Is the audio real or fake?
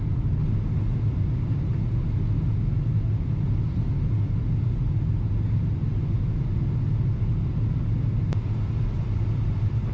real